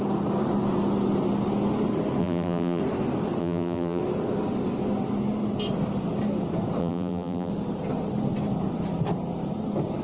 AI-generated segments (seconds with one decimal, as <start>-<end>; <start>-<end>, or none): 2.2-2.8; 3.4-4.0; 6.8-7.5